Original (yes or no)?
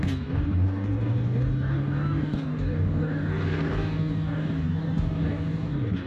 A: no